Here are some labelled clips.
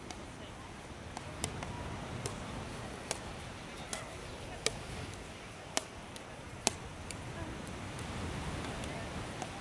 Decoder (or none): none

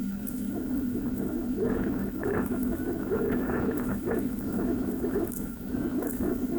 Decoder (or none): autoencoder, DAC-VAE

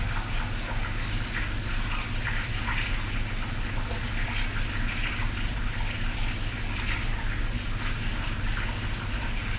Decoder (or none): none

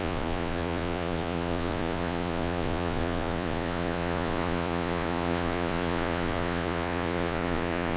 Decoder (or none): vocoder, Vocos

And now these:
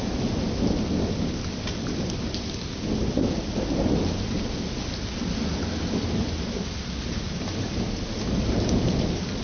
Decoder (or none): none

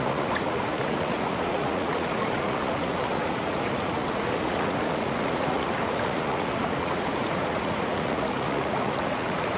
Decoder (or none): vocoder, Vocos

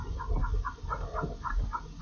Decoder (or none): none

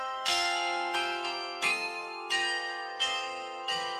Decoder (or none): codec, SNAC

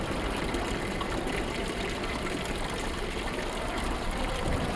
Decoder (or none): vocoder, BigVGAN v2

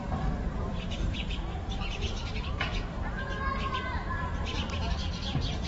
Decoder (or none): vocoder, BigVGAN v2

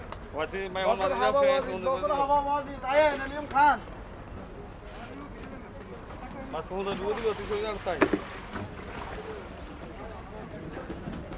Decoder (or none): none